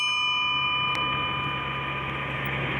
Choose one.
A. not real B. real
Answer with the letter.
B